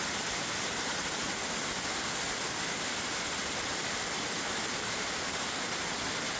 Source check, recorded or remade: recorded